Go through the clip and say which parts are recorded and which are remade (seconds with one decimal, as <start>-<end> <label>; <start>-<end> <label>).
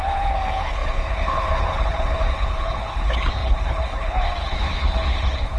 0.0-5.6 remade